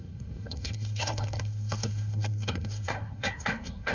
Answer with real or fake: fake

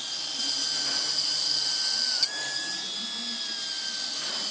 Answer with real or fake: real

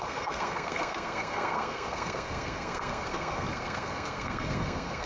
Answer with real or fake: fake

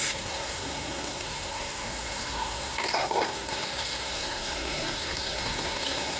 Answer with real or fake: fake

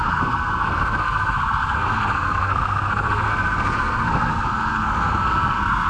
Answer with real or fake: fake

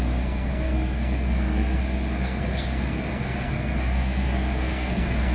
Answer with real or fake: fake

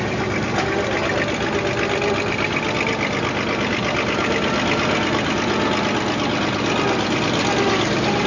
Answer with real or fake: real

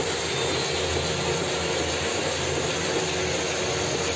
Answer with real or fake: real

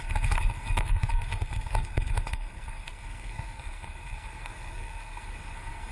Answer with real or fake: fake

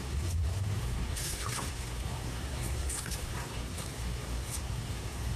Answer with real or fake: fake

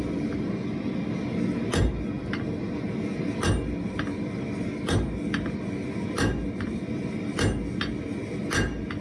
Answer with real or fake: real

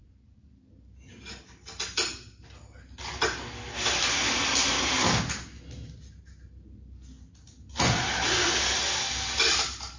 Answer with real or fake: real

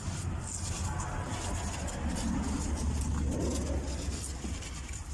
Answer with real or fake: real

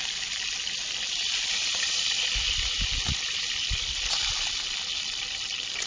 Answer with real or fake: real